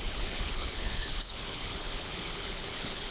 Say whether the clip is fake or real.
fake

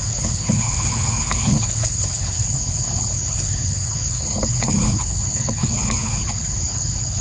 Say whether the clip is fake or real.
fake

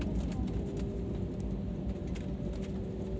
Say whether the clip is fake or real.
real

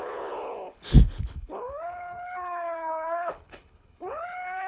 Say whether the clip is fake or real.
fake